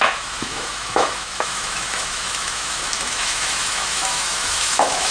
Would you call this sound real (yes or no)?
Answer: no